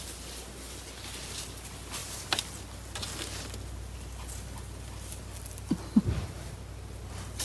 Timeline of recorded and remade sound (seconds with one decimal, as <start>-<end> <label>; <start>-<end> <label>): 0.0-7.4 recorded